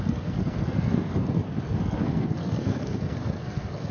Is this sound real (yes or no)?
no